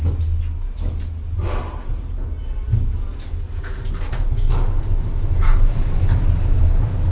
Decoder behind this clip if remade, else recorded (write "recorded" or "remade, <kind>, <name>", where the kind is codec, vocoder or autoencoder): recorded